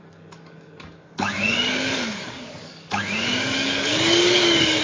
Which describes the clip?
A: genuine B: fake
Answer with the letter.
B